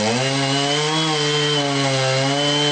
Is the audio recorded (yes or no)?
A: yes